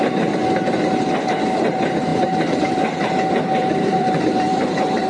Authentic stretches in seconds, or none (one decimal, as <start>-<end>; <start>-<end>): 0.4-1.2